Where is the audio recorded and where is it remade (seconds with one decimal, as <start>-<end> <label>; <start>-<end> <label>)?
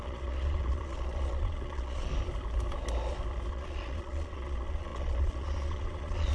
0.0-2.1 remade; 2.1-3.5 recorded; 3.5-6.3 remade